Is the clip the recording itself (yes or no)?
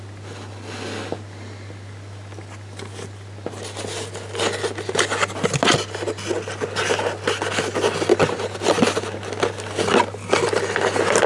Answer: yes